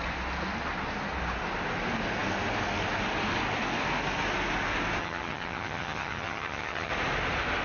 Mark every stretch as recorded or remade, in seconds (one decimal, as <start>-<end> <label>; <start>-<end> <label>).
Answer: 0.0-5.0 recorded; 5.0-6.9 remade; 6.9-7.6 recorded